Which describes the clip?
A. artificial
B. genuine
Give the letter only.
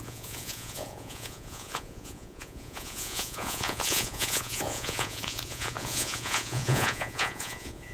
A